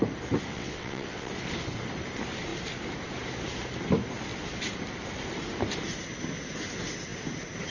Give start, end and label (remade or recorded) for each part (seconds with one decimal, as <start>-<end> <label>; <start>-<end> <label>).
0.0-0.5 recorded; 0.5-1.3 remade; 1.3-7.7 recorded